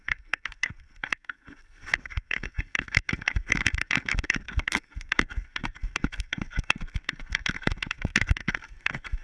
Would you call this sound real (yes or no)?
no